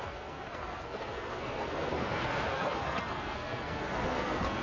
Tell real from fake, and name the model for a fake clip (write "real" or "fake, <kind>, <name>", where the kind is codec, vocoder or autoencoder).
fake, codec, SNAC